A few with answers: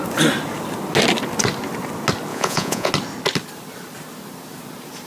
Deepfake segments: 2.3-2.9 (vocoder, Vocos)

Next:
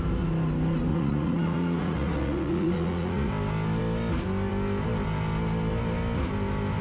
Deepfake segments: 0.9-3.3 (vocoder, Vocos)